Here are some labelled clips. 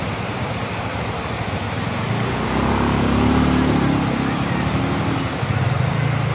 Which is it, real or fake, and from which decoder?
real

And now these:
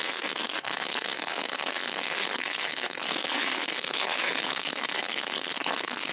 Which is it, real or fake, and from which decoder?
fake, codec, SNAC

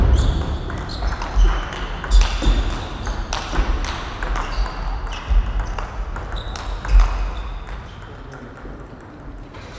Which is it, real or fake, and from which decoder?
real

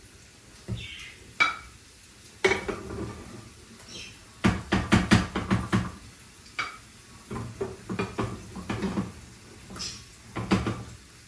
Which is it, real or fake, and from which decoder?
real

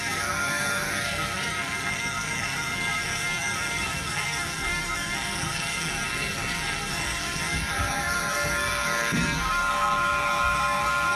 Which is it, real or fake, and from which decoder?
fake, codec, SNAC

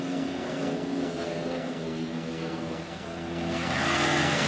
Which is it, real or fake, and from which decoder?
fake, codec, SNAC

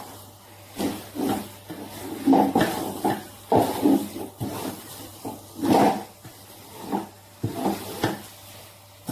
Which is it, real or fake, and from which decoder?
real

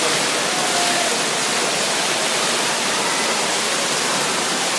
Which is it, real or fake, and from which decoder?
real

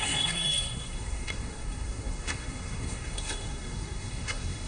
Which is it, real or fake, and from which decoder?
fake, codec, SNAC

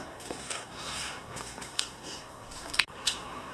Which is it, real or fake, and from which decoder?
fake, codec, SNAC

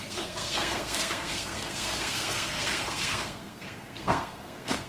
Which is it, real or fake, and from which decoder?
fake, codec, SNAC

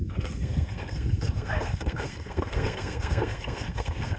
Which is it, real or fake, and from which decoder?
fake, codec, SNAC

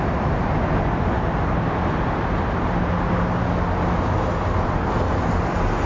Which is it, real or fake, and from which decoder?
real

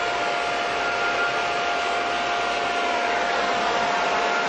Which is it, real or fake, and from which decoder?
real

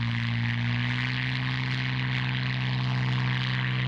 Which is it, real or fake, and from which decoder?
real